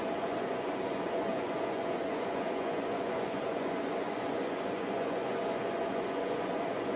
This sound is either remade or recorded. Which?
remade